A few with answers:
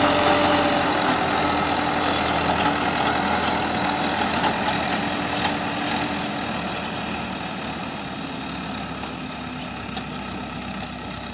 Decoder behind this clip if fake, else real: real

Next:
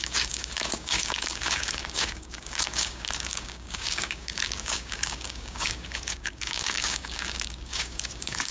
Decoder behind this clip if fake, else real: fake, codec, DAC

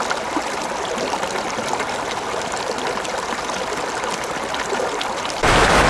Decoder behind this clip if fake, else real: real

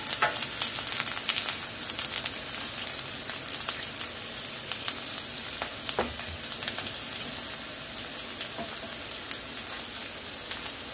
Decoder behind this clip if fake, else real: real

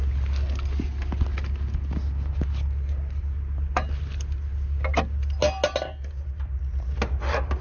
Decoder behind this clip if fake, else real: real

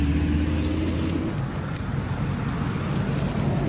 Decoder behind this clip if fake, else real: real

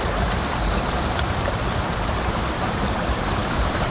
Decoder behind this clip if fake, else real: fake, vocoder, BigVGAN v2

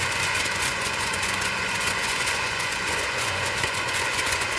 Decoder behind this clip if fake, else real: fake, vocoder, Vocos